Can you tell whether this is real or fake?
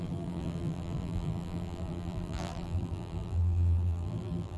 fake